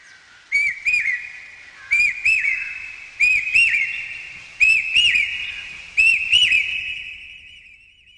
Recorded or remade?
recorded